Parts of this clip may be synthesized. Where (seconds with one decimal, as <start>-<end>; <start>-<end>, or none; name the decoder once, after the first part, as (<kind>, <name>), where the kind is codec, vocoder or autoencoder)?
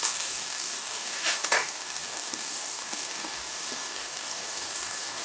0.0-5.2 (codec, DAC)